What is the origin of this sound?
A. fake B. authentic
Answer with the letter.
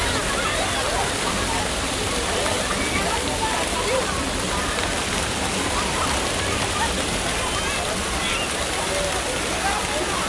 B